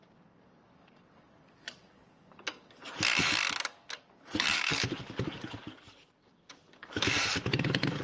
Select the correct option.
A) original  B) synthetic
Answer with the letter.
B